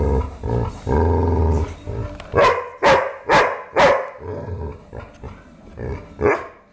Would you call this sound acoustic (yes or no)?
yes